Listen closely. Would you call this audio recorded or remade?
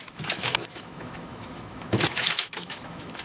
remade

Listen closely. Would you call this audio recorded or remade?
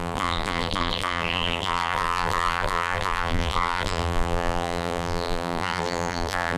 remade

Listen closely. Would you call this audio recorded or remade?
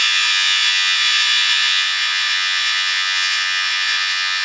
remade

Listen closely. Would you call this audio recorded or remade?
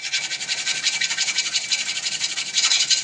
recorded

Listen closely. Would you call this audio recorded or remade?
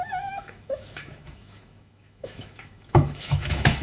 remade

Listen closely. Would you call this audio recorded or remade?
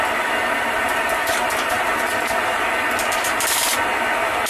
recorded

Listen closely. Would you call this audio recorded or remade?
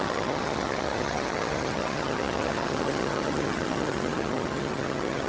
remade